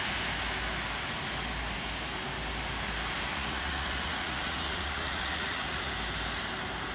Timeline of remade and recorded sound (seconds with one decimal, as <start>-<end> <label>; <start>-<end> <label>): 0.0-3.3 recorded; 3.3-5.9 remade; 5.9-6.9 recorded